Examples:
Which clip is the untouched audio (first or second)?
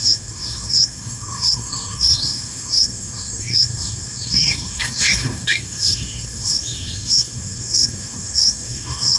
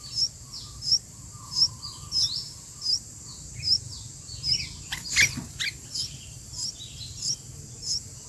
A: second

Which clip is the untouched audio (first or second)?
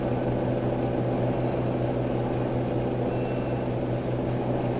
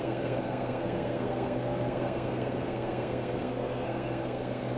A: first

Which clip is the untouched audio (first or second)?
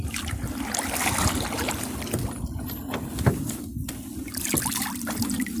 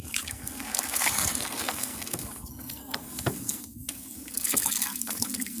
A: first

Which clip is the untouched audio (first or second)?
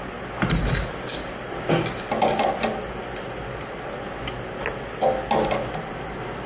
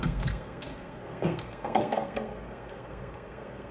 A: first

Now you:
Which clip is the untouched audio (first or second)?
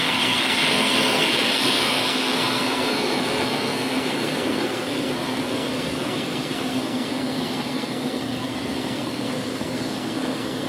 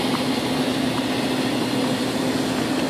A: second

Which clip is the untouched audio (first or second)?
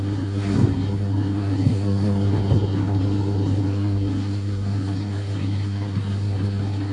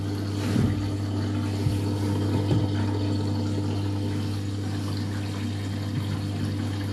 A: second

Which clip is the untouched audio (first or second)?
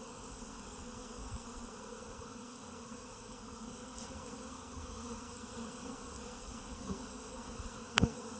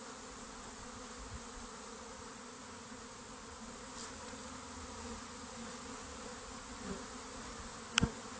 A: second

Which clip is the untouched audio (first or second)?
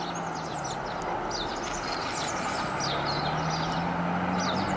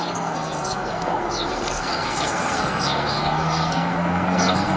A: first